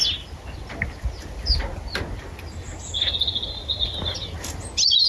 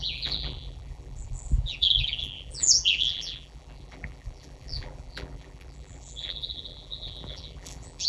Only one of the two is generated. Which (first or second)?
second